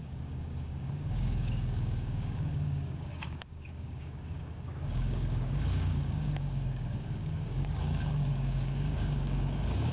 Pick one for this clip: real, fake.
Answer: fake